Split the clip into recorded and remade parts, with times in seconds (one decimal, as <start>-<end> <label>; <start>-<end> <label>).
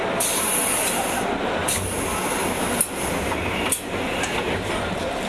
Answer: 0.0-5.3 recorded